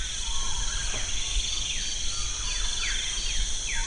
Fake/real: real